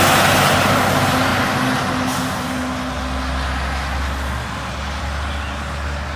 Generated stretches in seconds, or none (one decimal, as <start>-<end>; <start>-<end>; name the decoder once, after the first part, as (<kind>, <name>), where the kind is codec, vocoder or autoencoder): none